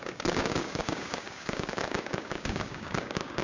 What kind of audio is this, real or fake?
fake